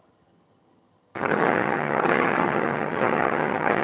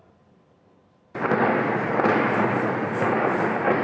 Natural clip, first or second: second